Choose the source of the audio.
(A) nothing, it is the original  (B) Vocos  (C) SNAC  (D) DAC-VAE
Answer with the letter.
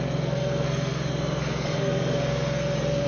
C